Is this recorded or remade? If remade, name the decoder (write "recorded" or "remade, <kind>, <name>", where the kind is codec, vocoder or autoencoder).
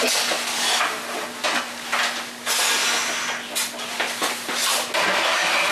recorded